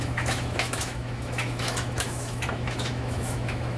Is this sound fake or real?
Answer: fake